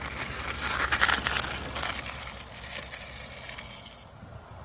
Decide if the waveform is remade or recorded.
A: recorded